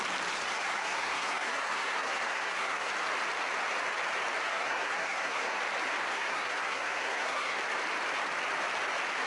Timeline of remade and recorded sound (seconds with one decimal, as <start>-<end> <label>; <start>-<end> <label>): 0.0-0.5 recorded; 0.5-2.9 remade; 2.9-4.5 recorded; 4.5-5.6 remade; 5.6-6.0 recorded; 6.0-7.6 remade; 7.6-9.3 recorded